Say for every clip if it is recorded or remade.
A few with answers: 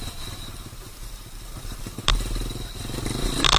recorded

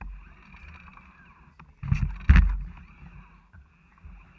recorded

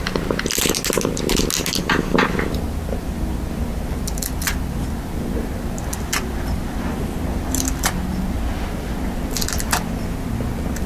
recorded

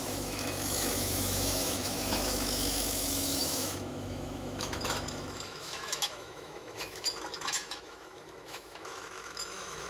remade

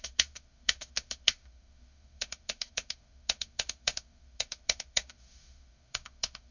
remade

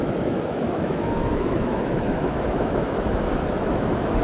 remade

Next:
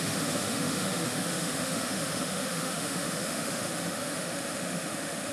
remade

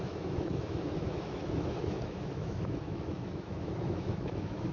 remade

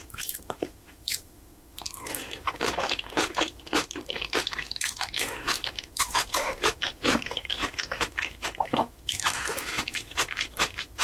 remade